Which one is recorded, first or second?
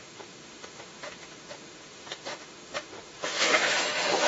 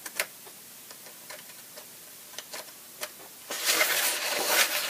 second